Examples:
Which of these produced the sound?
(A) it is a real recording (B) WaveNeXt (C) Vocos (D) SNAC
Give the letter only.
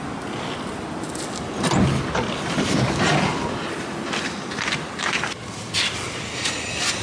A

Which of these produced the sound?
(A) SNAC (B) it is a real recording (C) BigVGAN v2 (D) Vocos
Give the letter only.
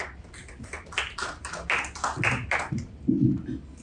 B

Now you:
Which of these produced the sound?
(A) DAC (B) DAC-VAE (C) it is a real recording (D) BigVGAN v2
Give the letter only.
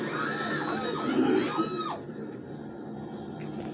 C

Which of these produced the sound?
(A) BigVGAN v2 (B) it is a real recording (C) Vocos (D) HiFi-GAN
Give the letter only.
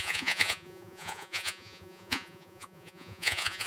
C